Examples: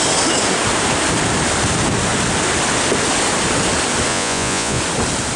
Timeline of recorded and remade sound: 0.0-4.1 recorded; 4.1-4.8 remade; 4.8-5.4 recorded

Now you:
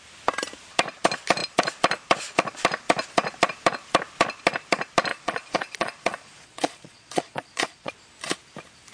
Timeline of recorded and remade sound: 0.0-5.1 recorded; 5.1-7.9 remade; 7.9-8.9 recorded

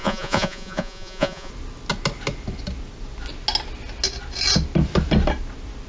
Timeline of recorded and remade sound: 0.0-1.5 remade; 1.5-5.9 recorded

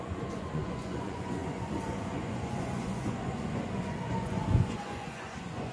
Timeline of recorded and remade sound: 0.0-5.7 remade

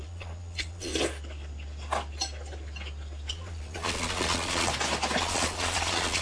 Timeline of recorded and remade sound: 0.0-0.9 remade; 0.9-3.3 recorded; 3.3-4.7 remade; 4.7-5.2 recorded; 5.2-6.2 remade

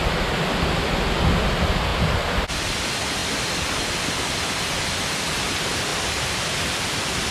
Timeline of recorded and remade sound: 0.0-7.3 recorded